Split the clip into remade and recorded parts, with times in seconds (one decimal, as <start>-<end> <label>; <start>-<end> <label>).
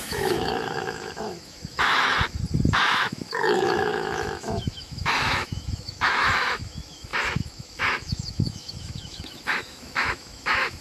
0.0-2.1 remade; 2.1-2.7 recorded; 2.7-10.8 remade